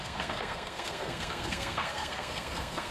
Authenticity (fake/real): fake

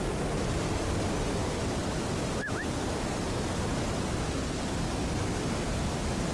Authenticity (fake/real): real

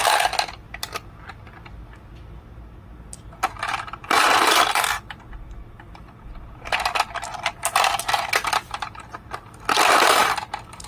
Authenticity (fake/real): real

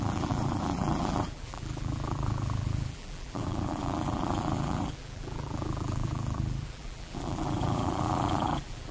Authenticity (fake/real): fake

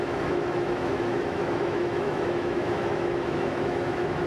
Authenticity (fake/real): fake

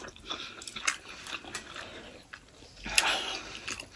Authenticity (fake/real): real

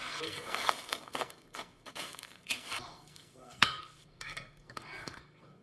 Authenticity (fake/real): fake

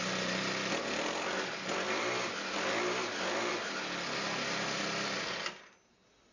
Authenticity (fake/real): real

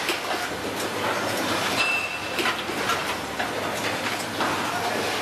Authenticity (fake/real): real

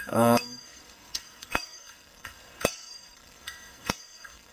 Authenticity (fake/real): fake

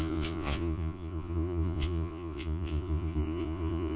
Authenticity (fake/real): fake